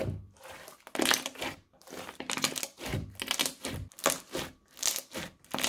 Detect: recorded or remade recorded